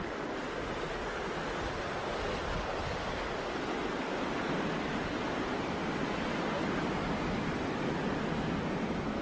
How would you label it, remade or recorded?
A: recorded